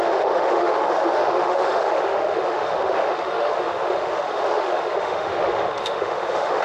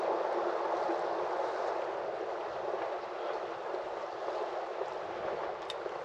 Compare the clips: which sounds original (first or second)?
second